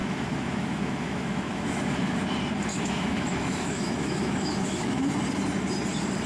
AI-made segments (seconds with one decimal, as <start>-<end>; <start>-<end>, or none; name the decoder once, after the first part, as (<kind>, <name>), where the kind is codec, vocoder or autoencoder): 0.0-2.2 (autoencoder, DAC-VAE); 2.7-5.2